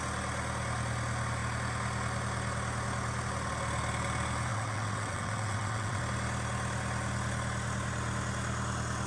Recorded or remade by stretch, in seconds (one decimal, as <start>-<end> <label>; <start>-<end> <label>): 0.0-4.5 recorded; 4.5-6.0 remade; 6.0-9.1 recorded